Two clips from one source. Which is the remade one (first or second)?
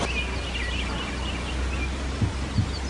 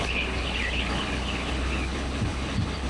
second